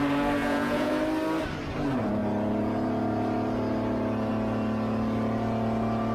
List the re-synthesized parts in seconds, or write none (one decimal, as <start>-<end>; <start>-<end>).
0.4-0.9